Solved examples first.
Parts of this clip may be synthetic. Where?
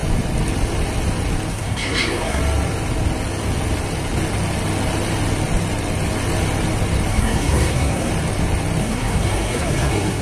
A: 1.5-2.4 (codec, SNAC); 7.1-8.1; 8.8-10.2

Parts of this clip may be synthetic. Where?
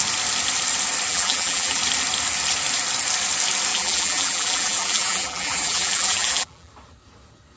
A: 1.1-1.8 (vocoder, BigVGAN v2); 3.7-6.7